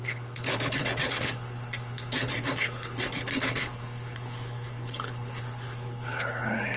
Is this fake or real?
fake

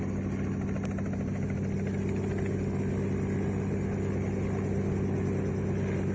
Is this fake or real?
real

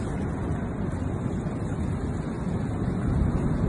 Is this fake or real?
real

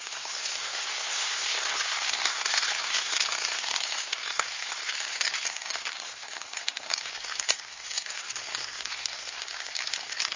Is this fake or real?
fake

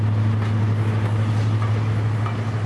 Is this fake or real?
real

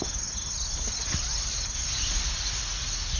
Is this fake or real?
real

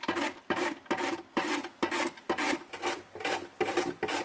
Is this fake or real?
real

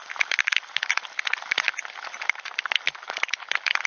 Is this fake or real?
real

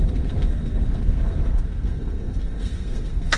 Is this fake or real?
fake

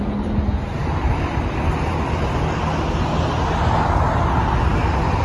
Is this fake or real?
real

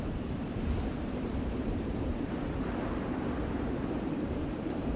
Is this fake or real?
fake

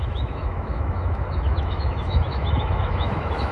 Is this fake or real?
fake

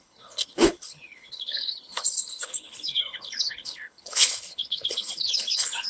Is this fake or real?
fake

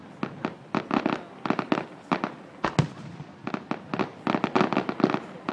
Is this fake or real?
real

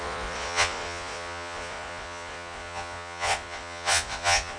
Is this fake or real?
fake